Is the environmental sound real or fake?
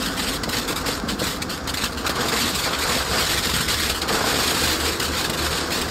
real